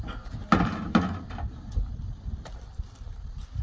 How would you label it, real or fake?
real